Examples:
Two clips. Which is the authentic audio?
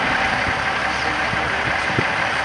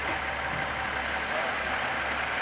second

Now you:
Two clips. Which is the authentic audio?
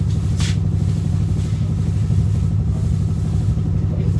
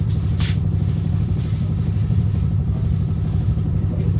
first